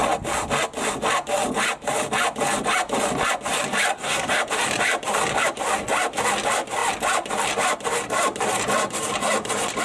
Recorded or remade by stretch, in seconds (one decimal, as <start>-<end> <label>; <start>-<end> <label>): 0.0-3.9 recorded; 3.9-4.4 remade; 4.4-9.8 recorded